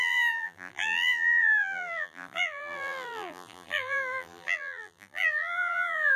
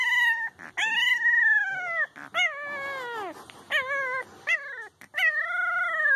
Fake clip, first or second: first